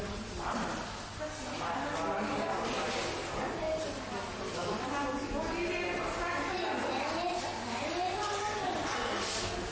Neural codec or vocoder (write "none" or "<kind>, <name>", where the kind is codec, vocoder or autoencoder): none